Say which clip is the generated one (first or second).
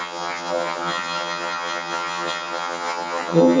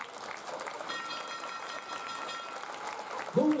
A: first